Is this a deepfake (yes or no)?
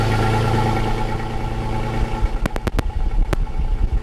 no